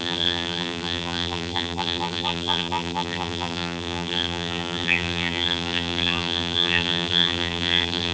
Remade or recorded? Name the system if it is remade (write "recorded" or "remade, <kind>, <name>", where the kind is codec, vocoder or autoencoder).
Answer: remade, vocoder, BigVGAN v2